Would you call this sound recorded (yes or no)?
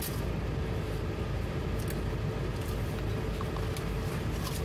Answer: yes